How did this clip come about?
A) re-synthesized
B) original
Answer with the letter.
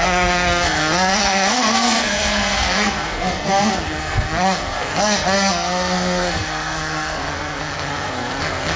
A